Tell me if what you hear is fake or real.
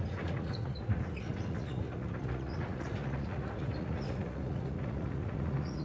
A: fake